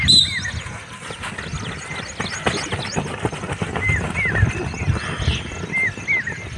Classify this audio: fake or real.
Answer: real